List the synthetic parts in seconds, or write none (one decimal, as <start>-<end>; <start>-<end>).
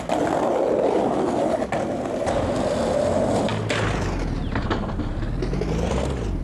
none